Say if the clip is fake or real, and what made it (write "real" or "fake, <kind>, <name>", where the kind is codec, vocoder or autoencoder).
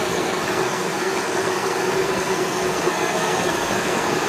fake, codec, SNAC